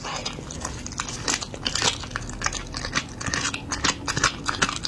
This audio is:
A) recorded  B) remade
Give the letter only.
A